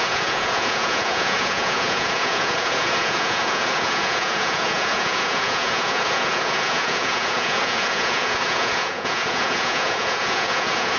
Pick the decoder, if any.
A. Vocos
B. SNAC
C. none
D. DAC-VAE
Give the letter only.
A